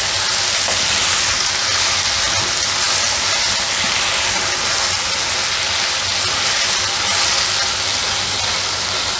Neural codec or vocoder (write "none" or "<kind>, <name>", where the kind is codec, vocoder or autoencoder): none